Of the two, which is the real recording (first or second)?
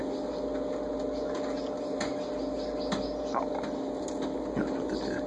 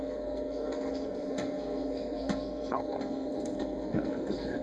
first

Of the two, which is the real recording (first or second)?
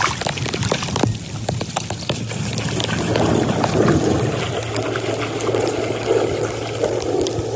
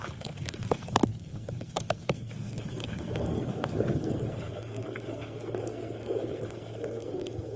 first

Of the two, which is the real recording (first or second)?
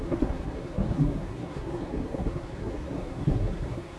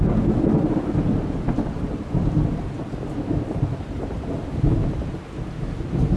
second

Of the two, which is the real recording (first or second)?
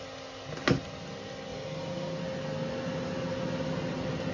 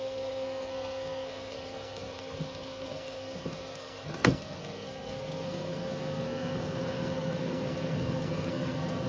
first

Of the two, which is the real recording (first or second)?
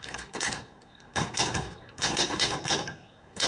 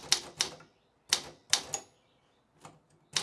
second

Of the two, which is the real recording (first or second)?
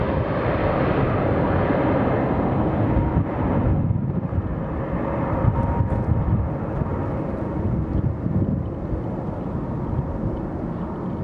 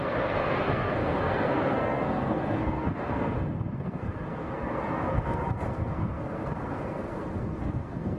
first